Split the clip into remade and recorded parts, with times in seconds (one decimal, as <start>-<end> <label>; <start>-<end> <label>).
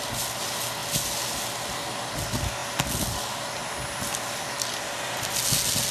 0.0-5.9 recorded